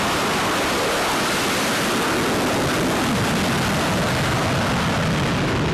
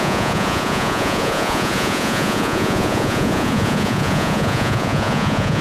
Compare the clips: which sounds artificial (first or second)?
second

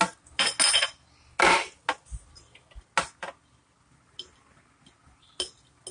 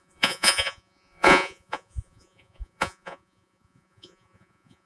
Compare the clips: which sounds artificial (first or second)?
second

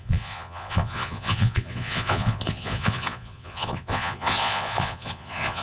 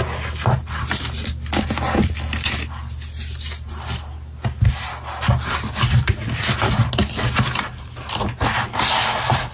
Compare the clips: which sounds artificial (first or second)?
first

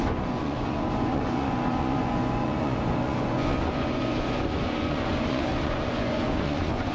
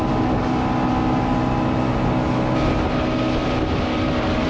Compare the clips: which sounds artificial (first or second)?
first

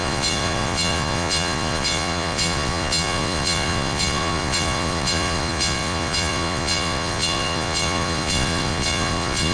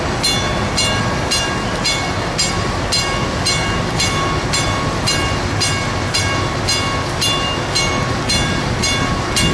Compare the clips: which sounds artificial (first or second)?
first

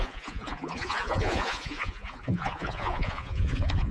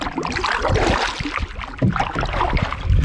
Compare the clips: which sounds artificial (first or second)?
first